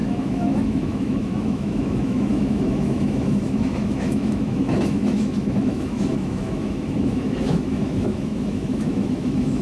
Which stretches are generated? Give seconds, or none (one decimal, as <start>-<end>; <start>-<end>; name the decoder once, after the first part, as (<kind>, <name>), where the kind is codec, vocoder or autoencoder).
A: 0.0-9.6 (autoencoder, DAC-VAE)